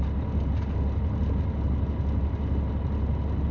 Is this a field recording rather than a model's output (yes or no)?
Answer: yes